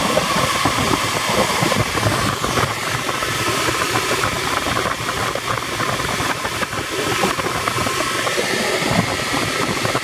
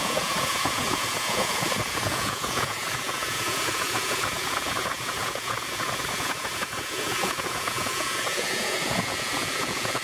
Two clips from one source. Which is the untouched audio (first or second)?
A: first